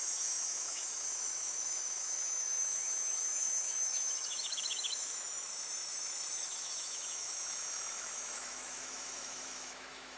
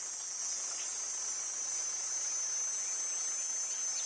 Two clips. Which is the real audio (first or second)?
second